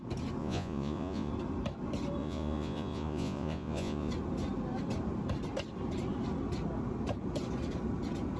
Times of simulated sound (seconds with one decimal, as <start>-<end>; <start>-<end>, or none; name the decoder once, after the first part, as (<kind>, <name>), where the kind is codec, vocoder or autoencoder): 0.4-1.3 (vocoder, Vocos); 2.2-4.1

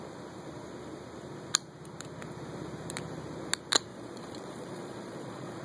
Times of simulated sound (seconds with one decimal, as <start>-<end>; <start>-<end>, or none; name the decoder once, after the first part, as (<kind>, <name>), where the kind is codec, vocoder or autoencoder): 3.9-5.6 (vocoder, Vocos)

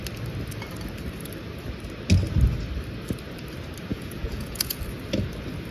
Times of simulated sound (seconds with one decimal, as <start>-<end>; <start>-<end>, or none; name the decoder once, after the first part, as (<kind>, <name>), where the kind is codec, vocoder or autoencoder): 3.9-4.8 (vocoder, Vocos)

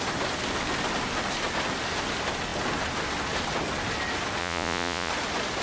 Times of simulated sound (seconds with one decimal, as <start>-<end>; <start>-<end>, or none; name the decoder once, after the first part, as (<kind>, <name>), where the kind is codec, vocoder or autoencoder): 4.4-5.1 (vocoder, Vocos)

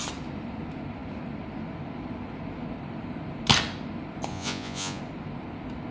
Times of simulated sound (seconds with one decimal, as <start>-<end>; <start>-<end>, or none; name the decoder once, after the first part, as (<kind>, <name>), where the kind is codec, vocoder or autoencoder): 4.3-5.0 (vocoder, Vocos)

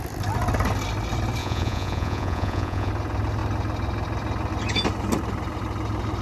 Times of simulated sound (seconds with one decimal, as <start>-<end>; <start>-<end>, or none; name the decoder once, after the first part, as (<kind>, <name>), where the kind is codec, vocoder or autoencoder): 1.4-2.9 (vocoder, Vocos)

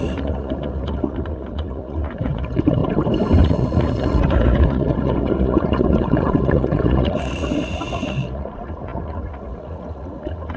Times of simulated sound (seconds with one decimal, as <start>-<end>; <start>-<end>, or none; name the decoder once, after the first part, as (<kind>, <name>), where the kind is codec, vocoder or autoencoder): 0.0-2.8 (vocoder, Vocos); 3.4-10.6

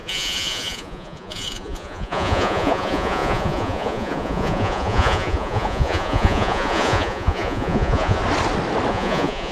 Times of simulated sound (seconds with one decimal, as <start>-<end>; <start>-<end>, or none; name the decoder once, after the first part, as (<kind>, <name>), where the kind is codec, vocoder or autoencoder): 0.0-8.2 (vocoder, Vocos); 8.9-9.5